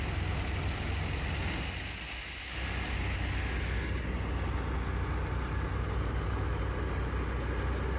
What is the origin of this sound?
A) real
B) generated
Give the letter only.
A